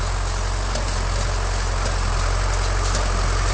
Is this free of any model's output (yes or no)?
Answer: yes